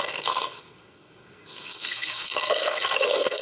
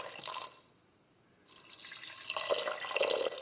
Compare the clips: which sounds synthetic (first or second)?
first